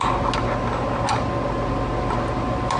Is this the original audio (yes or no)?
yes